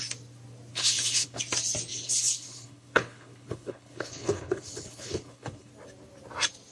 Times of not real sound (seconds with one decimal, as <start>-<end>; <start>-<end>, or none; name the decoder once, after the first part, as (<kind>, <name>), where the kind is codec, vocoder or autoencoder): 0.7-1.4 (codec, HILCodec); 1.9-5.7